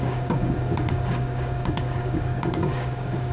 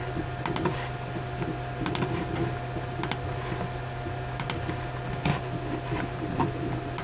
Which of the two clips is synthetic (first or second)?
first